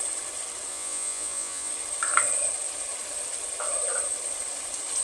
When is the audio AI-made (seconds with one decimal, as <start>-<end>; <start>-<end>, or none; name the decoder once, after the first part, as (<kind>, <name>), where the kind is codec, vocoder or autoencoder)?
0.7-1.7 (vocoder, Vocos)